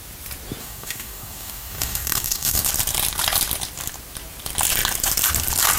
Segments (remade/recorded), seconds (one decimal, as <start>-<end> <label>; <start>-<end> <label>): 0.0-0.6 recorded; 0.6-2.7 remade; 2.7-5.8 recorded